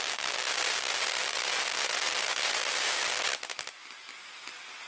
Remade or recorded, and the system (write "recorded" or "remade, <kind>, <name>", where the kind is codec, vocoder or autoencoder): recorded